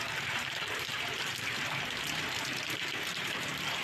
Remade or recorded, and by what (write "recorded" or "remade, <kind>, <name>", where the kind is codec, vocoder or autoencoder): remade, vocoder, BigVGAN v2